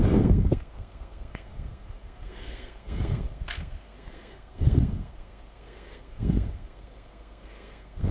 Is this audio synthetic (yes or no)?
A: yes